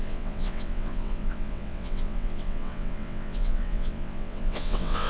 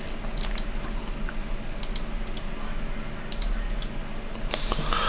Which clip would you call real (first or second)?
second